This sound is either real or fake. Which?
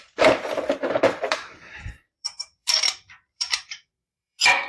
fake